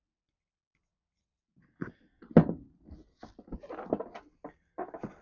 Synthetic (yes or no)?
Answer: no